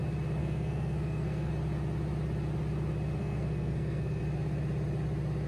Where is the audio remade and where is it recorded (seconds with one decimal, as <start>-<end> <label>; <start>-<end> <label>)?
0.0-0.4 recorded; 0.4-1.5 remade; 1.5-3.2 recorded; 3.2-4.2 remade; 4.2-5.5 recorded